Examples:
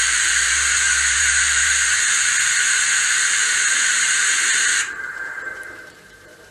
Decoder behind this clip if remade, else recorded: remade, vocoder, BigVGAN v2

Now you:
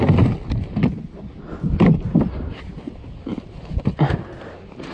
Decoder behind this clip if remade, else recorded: recorded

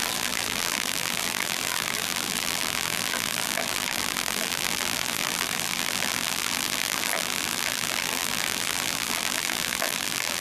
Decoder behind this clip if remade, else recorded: remade, vocoder, BigVGAN v2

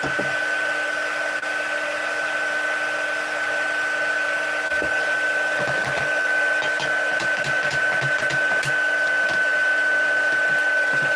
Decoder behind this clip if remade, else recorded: recorded